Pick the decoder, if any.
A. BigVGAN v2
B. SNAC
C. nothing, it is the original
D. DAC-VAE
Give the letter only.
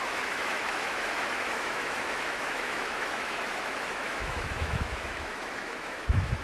D